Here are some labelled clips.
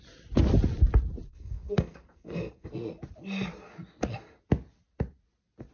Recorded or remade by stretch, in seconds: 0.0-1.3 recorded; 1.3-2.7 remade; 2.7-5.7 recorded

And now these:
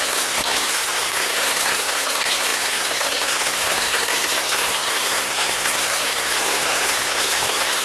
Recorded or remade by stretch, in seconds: 0.0-7.8 remade

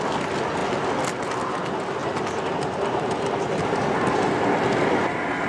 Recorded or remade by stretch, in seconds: 0.0-5.5 recorded

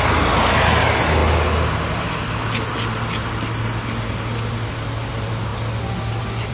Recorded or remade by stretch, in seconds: 0.0-6.5 recorded